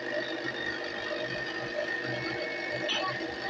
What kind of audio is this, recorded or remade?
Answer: recorded